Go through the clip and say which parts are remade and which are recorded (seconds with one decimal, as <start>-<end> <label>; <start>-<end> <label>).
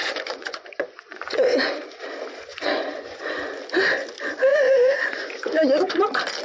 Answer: 0.0-1.7 remade; 1.7-2.5 recorded; 2.5-3.5 remade; 3.5-4.5 recorded; 4.5-6.0 remade; 6.0-6.4 recorded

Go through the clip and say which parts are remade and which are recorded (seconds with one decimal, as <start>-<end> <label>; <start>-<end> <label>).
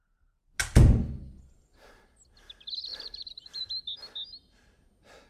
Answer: 0.0-2.9 recorded; 2.9-3.6 remade; 3.6-5.3 recorded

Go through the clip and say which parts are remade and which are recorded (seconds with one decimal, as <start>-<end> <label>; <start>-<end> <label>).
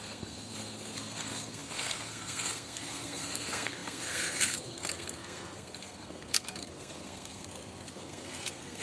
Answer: 0.0-8.8 remade